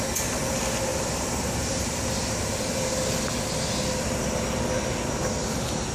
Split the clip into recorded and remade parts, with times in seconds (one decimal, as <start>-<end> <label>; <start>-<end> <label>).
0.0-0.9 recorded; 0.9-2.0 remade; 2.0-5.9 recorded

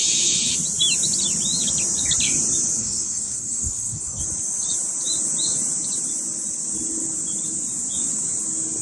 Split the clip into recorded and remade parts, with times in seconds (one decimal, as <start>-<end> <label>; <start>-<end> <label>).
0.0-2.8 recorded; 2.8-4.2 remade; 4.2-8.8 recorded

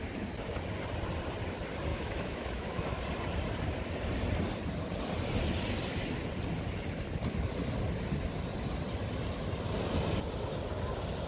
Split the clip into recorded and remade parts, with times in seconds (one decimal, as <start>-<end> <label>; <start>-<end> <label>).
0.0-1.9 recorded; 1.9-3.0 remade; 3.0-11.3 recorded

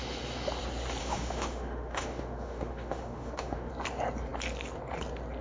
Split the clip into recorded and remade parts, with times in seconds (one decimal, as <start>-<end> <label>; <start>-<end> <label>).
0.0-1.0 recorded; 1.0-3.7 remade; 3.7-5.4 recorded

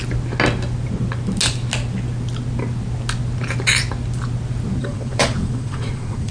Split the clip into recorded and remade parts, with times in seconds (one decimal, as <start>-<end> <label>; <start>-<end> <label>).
0.0-4.8 recorded; 4.8-6.3 remade

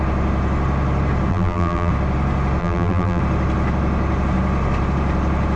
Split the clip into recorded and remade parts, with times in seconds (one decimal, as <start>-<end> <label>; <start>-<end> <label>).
0.0-1.3 recorded; 1.3-1.9 remade; 1.9-2.6 recorded; 2.6-3.2 remade; 3.2-5.6 recorded